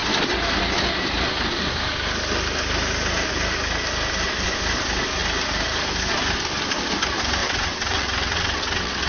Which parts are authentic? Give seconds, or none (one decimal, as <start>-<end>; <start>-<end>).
0.0-7.4